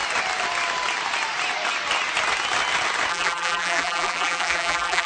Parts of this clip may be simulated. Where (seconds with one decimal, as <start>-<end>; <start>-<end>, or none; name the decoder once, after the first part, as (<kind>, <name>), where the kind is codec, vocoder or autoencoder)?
3.1-5.1 (vocoder, BigVGAN v2)